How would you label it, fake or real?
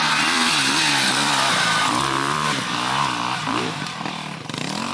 fake